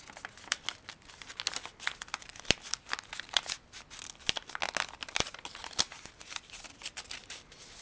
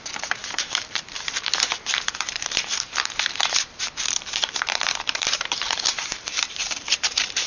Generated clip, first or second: second